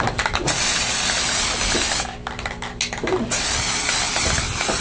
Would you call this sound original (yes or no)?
yes